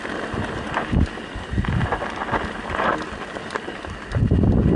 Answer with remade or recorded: recorded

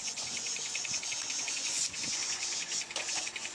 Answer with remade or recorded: remade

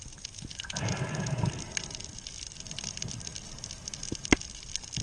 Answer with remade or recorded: remade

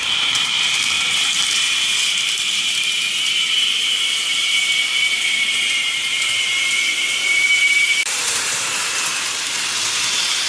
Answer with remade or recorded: remade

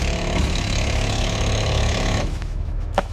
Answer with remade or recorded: remade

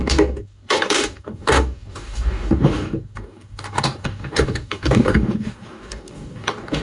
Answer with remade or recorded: remade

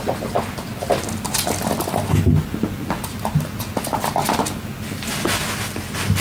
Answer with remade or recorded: recorded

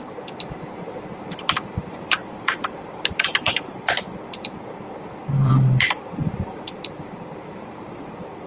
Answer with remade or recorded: remade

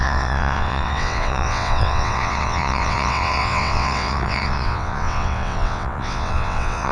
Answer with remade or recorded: remade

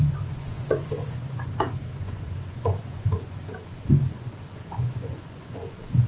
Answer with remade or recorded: remade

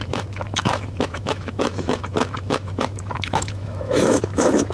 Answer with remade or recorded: remade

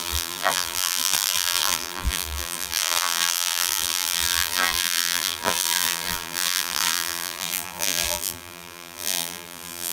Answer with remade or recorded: remade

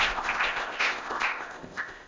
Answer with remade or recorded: remade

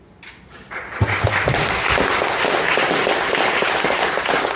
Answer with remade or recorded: recorded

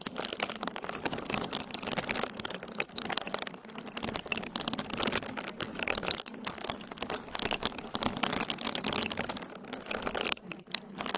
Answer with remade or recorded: recorded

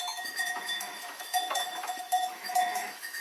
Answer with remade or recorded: remade